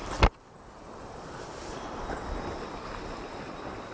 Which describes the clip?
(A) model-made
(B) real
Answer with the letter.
B